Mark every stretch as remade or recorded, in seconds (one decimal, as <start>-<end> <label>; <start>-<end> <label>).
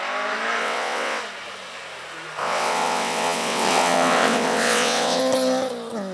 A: 0.0-0.6 recorded; 0.6-1.2 remade; 1.2-2.4 recorded; 2.4-5.2 remade; 5.2-6.1 recorded